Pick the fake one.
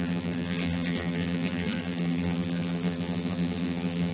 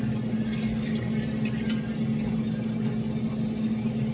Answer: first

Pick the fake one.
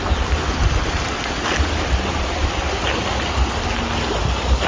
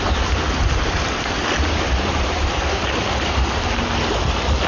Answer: second